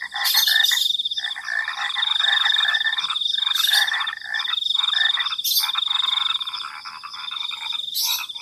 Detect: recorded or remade recorded